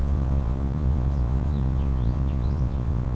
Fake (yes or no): yes